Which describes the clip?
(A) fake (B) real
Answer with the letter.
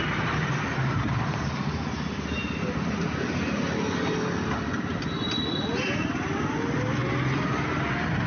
B